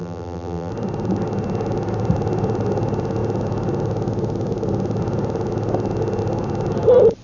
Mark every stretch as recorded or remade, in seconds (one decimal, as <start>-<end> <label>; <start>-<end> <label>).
0.0-0.7 remade; 0.7-7.2 recorded